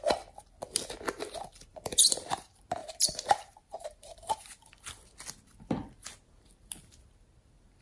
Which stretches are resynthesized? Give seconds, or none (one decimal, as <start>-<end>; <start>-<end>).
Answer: 1.7-2.4; 2.8-4.5